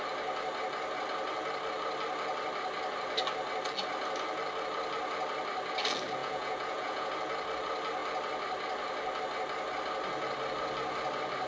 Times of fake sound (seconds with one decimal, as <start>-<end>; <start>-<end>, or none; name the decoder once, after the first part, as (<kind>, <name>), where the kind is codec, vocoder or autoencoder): 6.2-7.1 (vocoder, Vocos)